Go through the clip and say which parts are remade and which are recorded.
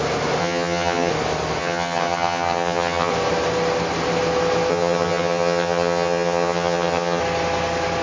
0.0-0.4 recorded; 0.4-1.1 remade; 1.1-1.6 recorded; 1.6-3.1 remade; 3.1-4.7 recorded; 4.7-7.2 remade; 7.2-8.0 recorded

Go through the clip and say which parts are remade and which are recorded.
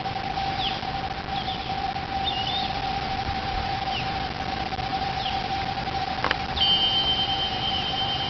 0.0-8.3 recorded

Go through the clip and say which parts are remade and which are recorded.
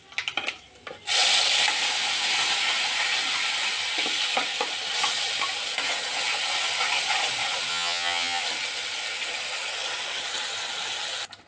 0.0-7.7 recorded; 7.7-8.4 remade; 8.4-11.5 recorded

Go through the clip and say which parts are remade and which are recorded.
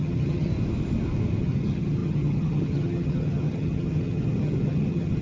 0.0-0.5 remade; 0.5-1.4 recorded; 1.4-5.2 remade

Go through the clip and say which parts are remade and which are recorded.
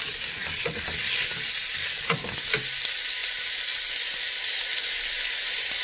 0.0-5.8 recorded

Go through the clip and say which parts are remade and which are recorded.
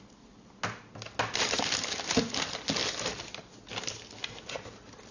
0.0-5.1 recorded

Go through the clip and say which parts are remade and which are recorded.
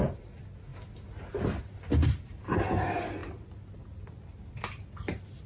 0.0-5.5 recorded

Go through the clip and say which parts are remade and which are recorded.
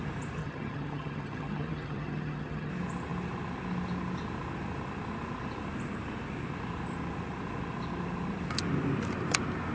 0.0-0.4 recorded; 0.4-2.7 remade; 2.7-9.7 recorded